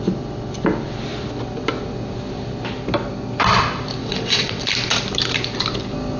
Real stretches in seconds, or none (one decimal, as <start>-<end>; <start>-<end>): 0.0-4.0; 4.6-6.2

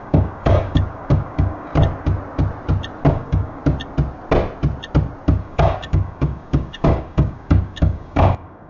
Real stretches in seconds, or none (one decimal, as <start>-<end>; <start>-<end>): 1.7-3.1; 3.6-5.4

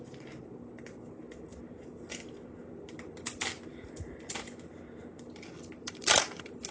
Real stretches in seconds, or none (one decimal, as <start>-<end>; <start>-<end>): 0.0-6.7

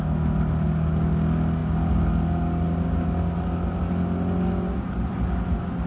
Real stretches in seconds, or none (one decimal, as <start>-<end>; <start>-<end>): 0.0-5.9

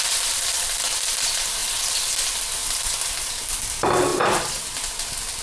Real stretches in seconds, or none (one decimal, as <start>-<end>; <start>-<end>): 0.0-2.6; 3.3-4.1; 4.9-5.4